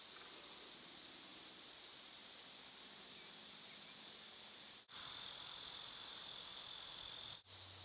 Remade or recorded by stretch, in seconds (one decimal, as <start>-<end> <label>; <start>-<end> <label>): 0.0-7.8 recorded